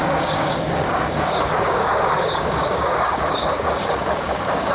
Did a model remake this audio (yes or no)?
yes